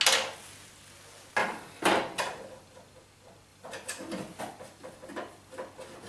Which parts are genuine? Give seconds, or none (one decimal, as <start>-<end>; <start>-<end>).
0.0-1.4; 2.8-3.5; 4.4-6.1